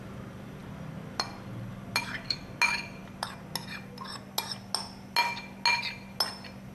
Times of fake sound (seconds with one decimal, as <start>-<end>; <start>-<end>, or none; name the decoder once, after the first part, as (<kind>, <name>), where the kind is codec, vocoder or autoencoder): none